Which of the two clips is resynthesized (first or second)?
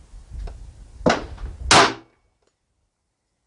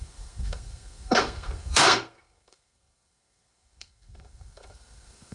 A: second